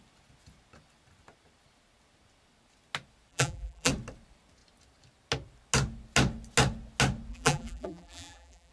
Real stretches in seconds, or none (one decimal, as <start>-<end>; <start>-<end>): 0.0-3.3; 3.9-7.3